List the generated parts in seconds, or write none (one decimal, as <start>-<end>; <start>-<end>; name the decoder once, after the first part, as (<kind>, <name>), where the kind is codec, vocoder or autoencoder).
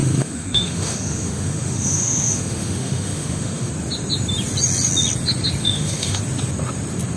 0.0-3.7 (autoencoder, DAC-VAE); 5.6-6.2